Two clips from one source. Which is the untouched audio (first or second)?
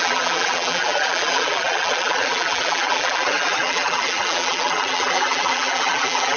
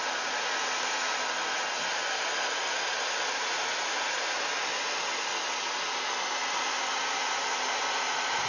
second